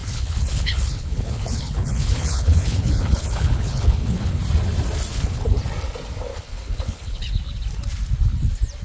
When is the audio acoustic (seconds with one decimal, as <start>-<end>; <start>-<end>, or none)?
4.4-5.1; 5.6-6.3; 7.3-8.8